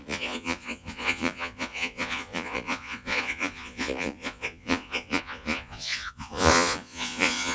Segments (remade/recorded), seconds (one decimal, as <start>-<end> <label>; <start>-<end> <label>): 0.0-7.5 remade